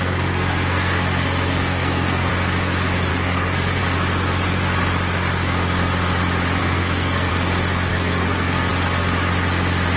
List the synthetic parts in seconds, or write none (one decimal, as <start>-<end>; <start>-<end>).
0.0-2.3; 3.1-3.8; 6.6-7.3; 7.9-8.7